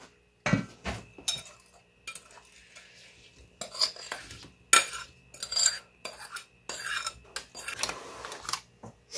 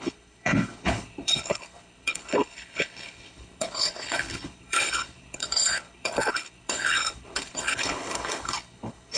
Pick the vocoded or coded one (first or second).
second